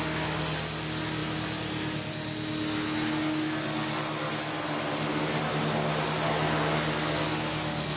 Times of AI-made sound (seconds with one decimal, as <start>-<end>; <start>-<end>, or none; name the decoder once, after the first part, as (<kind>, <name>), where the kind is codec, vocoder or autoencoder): none